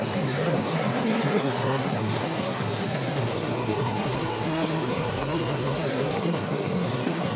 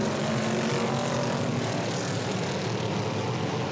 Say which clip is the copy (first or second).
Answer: first